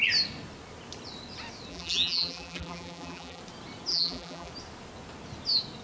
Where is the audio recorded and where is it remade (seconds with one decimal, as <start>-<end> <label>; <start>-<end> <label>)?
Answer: 0.0-1.7 recorded; 1.7-3.4 remade; 3.4-3.9 recorded; 3.9-4.5 remade; 4.5-5.8 recorded